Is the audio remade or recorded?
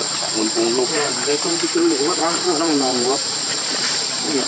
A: remade